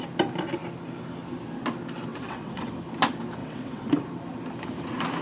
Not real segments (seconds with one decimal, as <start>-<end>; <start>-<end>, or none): 2.1-2.7; 3.4-4.0